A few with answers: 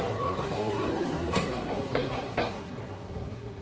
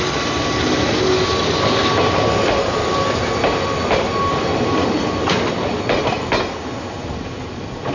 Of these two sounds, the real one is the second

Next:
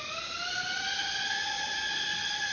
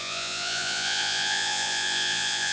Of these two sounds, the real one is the first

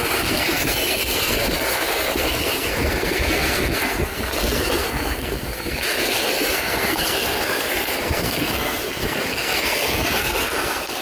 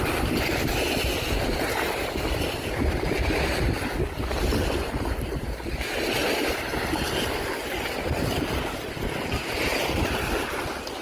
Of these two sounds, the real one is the second